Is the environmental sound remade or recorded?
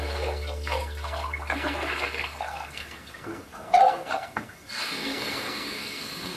remade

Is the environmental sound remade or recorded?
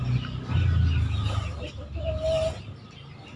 recorded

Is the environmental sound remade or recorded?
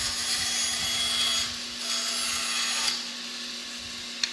recorded